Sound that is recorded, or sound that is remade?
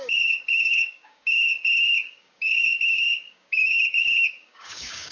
remade